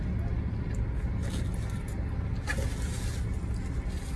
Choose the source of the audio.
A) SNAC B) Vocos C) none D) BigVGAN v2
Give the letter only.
C